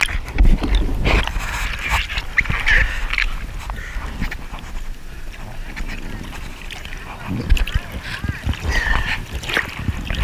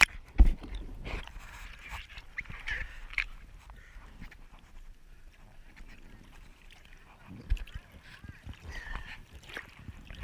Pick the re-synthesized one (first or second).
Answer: second